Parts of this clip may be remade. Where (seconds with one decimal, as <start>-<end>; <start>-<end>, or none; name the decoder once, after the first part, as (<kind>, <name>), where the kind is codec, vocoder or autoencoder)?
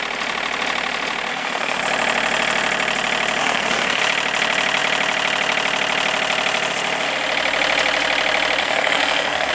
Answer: 1.3-1.8 (codec, SNAC); 3.4-4.0; 8.6-9.5